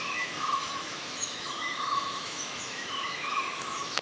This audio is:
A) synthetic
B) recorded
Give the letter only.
A